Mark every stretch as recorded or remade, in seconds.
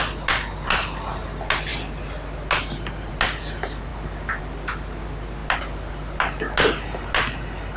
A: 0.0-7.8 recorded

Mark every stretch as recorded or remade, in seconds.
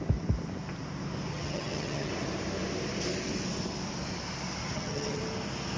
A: 0.0-1.3 recorded; 1.3-2.1 remade; 2.1-4.6 recorded; 4.6-5.2 remade; 5.2-5.8 recorded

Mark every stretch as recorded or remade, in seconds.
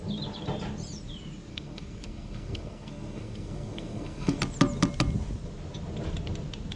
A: 0.0-1.5 recorded; 1.5-4.4 remade; 4.4-6.8 recorded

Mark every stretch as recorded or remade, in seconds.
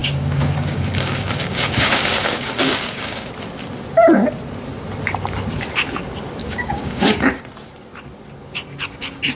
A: 0.0-3.3 remade; 3.3-6.4 recorded; 6.4-7.4 remade; 7.4-9.3 recorded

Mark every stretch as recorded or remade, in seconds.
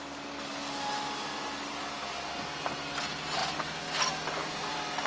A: 0.0-5.1 recorded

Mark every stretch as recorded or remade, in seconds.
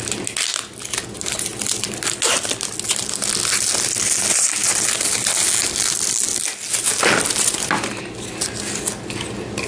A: 0.0-9.7 recorded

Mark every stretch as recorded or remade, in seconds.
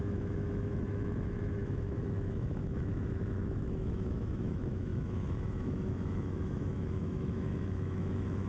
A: 0.0-8.5 remade